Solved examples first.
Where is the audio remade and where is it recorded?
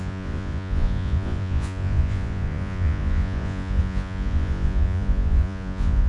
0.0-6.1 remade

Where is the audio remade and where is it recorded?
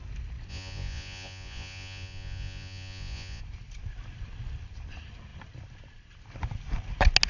0.0-0.5 recorded; 0.5-3.4 remade; 3.4-7.3 recorded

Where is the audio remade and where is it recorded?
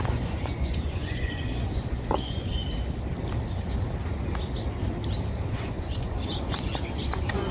0.0-2.6 remade; 2.6-5.5 recorded; 5.5-7.5 remade